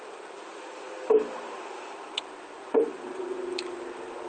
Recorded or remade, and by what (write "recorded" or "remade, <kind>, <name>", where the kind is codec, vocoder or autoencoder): recorded